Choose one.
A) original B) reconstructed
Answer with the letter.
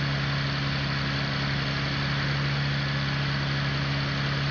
A